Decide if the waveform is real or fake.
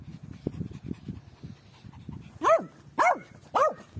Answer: real